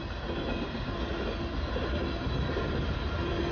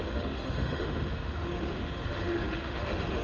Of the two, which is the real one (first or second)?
first